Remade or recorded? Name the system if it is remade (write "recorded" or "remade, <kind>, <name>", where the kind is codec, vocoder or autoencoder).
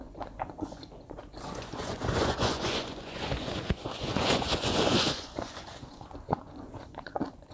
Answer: remade, vocoder, Vocos